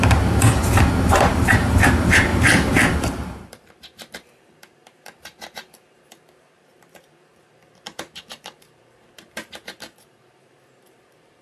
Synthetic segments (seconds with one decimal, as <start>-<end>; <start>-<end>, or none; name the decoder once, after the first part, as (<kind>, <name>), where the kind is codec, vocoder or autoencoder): 0.0-0.6 (vocoder, BigVGAN v2); 1.1-11.4